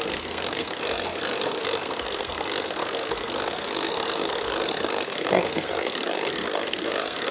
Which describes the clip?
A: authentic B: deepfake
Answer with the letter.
B